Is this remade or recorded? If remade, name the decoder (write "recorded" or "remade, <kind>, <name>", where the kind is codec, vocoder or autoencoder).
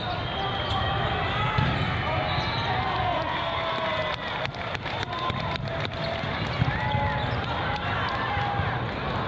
recorded